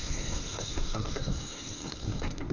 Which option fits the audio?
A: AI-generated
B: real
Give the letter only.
A